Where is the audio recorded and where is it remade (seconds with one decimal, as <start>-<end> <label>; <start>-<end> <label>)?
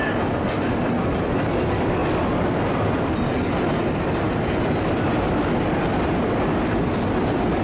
0.0-7.6 recorded